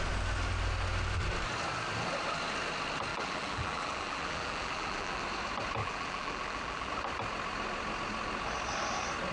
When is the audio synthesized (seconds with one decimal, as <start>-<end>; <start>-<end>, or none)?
3.1-5.2; 5.8-6.9